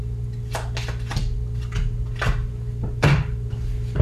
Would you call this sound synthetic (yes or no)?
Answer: no